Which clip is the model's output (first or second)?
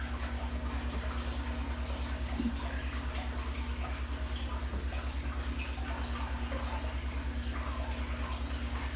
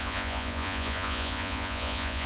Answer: second